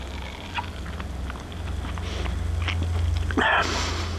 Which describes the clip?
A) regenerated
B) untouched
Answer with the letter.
B